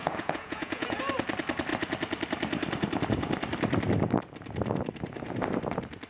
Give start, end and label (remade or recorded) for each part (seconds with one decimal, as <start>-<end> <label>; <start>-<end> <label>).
0.0-1.0 remade; 1.0-6.1 recorded